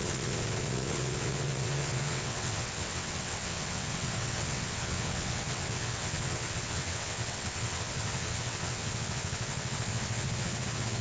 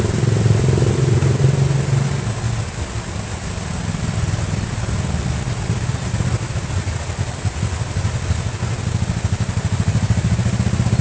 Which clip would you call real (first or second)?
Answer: second